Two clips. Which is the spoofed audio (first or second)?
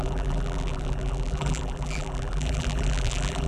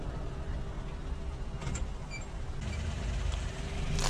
first